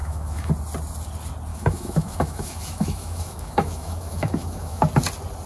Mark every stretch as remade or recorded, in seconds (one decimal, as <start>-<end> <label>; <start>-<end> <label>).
0.0-0.5 remade; 0.5-1.5 recorded; 1.5-4.8 remade; 4.8-5.5 recorded